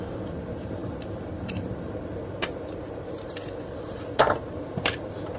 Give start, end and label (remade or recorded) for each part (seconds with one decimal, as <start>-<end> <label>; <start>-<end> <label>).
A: 0.0-5.4 remade